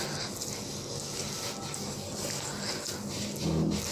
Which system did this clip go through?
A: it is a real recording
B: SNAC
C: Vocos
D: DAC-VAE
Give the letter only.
A